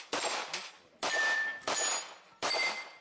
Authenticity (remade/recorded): remade